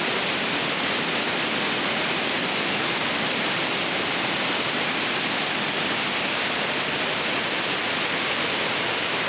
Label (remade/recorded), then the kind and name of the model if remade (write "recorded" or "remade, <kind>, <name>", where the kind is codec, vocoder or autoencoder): recorded